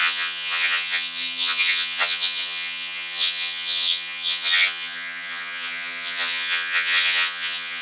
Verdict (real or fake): fake